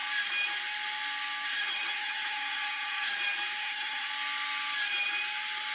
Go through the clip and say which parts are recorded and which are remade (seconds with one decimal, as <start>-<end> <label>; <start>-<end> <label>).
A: 0.0-1.5 recorded; 1.5-3.1 remade; 3.1-3.6 recorded; 3.6-4.1 remade; 4.1-5.7 recorded